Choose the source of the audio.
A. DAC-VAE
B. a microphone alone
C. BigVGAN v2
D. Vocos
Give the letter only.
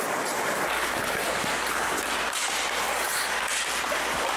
C